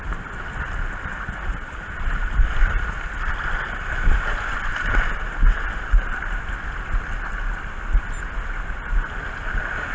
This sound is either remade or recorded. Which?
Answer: recorded